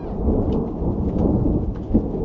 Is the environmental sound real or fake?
real